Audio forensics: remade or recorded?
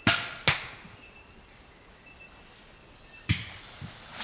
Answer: recorded